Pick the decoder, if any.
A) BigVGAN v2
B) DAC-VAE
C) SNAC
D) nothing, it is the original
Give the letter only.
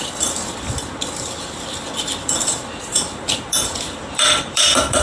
A